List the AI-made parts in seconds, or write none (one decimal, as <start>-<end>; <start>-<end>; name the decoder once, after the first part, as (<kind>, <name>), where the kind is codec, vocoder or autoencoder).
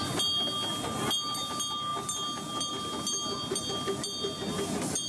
none